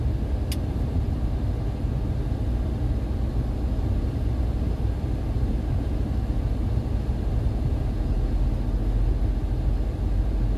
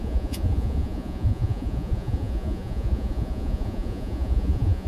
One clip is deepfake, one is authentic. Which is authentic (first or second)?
first